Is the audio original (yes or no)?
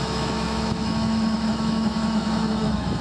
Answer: no